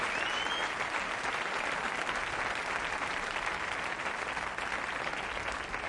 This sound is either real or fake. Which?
real